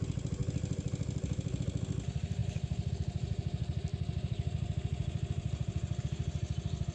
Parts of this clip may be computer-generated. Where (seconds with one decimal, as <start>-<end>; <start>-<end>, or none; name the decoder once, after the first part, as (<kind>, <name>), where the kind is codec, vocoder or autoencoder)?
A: 0.4-1.6 (vocoder, BigVGAN v2); 3.9-6.0